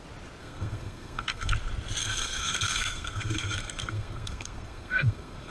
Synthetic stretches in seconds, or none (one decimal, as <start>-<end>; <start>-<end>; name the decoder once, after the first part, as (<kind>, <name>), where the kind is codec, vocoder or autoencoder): 0.4-1.5 (codec, SNAC); 2.0-5.5